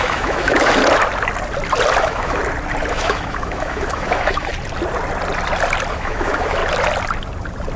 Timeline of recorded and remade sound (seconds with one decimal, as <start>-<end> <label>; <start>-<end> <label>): 0.0-0.8 remade; 0.8-2.0 recorded; 2.0-2.4 remade; 2.4-2.9 recorded; 2.9-4.5 remade; 4.5-5.9 recorded; 5.9-6.6 remade; 6.6-7.8 recorded